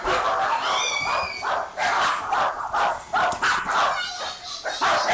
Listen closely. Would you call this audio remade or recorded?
recorded